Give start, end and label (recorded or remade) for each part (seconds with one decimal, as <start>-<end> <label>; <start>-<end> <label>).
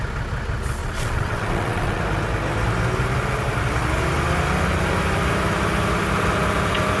0.0-0.8 recorded; 0.8-2.0 remade; 2.0-7.0 recorded